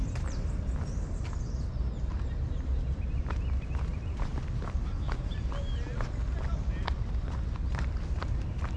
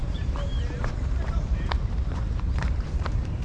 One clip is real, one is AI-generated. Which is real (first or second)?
first